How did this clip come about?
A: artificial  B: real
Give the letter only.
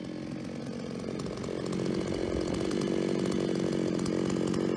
B